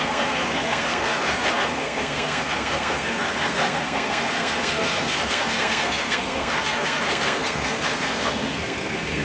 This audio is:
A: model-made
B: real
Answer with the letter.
A